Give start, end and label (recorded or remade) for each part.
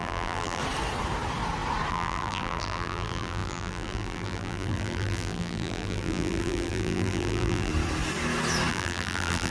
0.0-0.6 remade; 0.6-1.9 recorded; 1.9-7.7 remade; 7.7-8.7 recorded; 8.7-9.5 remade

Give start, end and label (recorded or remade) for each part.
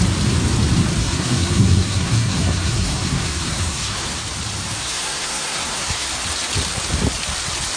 0.0-1.0 recorded; 1.0-4.2 remade; 4.2-4.8 recorded; 4.8-6.1 remade; 6.1-7.8 recorded